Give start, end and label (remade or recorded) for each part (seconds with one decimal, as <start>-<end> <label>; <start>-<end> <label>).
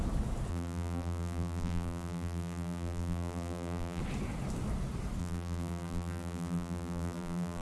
0.0-0.5 recorded; 0.5-4.0 remade; 4.0-5.2 recorded; 5.2-7.6 remade